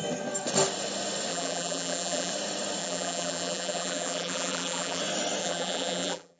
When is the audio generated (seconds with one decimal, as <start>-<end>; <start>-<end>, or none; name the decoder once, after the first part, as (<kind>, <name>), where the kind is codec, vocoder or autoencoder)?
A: 1.3-2.3 (vocoder, BigVGAN v2); 2.8-5.0; 5.4-6.4

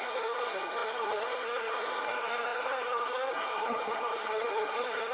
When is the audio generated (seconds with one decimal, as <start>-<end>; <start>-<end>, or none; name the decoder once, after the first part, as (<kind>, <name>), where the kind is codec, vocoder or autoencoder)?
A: 0.0-5.1 (codec, SNAC)

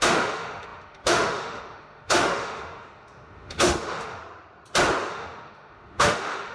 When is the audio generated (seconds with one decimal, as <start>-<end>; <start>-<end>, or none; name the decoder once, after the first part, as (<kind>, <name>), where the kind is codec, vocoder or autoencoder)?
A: 0.0-4.2 (autoencoder, DAC-VAE); 5.1-6.5

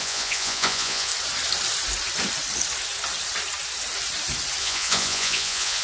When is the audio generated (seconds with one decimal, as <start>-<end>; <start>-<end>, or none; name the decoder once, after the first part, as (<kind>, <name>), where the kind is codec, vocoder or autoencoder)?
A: 0.0-1.1 (vocoder, Vocos); 4.6-5.8

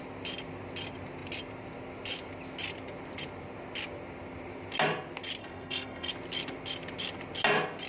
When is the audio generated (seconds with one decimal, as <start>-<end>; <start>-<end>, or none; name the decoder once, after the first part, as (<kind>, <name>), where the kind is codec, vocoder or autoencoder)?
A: 5.4-6.1 (codec, SNAC)